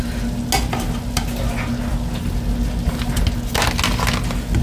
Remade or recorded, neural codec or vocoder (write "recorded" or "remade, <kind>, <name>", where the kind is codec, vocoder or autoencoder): recorded